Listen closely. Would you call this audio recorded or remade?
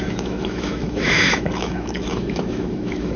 remade